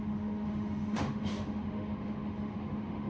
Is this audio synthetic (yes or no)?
yes